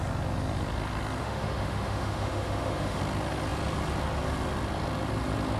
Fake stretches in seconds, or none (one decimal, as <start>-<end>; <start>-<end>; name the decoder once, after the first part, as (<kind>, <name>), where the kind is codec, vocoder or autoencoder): 1.2-3.0 (autoencoder, DAC-VAE)